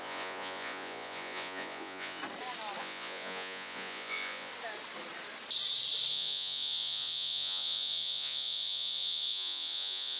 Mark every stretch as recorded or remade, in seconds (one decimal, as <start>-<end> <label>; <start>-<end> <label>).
0.0-2.2 remade; 2.2-2.8 recorded; 2.8-4.5 remade; 4.5-6.1 recorded; 6.1-10.2 remade